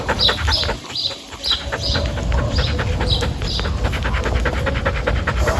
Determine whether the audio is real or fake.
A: real